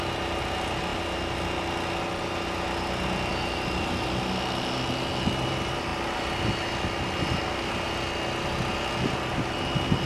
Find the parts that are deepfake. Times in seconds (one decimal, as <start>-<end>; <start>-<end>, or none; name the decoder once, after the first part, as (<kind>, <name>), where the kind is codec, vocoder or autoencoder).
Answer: none